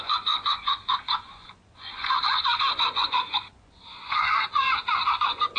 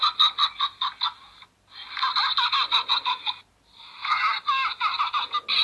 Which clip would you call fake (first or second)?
first